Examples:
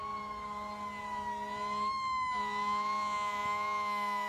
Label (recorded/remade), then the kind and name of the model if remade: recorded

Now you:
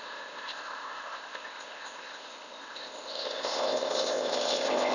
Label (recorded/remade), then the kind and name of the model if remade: remade, codec, ZipCodec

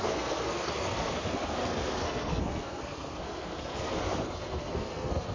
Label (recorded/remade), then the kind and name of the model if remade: remade, codec, SNAC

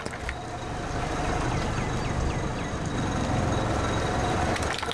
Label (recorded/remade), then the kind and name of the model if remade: recorded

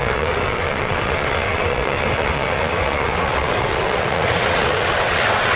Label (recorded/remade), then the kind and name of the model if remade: remade, vocoder, WaveNeXt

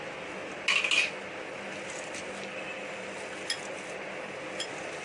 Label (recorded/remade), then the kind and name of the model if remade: recorded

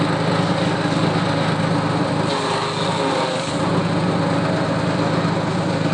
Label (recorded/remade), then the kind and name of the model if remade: recorded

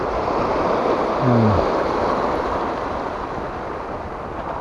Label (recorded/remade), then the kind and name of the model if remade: recorded